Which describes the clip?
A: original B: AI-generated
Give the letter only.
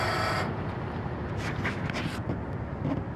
A